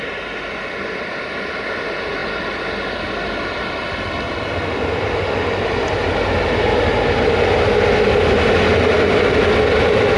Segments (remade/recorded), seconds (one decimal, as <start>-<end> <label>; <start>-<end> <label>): 0.0-2.2 recorded; 2.2-5.0 remade; 5.0-10.2 recorded